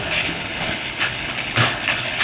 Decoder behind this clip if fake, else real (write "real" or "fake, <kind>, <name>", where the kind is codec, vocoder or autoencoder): fake, codec, HILCodec